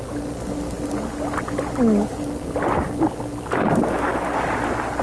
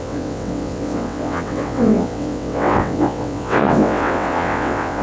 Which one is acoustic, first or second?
first